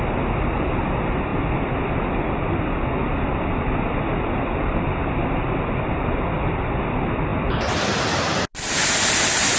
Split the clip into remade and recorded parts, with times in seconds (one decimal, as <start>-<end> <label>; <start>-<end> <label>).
0.0-9.6 recorded